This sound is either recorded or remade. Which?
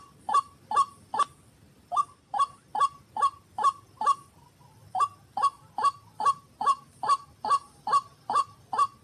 remade